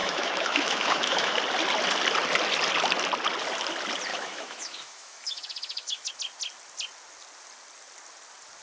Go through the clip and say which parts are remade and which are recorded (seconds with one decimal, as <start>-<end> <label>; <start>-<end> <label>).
0.0-1.4 remade; 1.4-4.1 recorded; 4.1-6.1 remade; 6.1-8.6 recorded